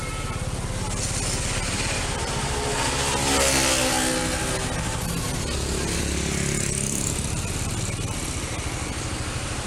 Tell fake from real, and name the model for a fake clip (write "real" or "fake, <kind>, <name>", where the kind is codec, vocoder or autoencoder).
real